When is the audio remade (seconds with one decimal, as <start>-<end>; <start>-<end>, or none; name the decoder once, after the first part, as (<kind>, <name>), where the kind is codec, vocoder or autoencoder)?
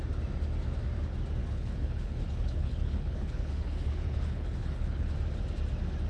1.4-5.1 (codec, HILCodec)